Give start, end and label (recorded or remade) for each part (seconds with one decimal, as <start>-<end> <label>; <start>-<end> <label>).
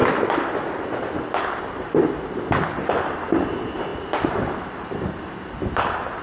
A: 0.0-6.2 recorded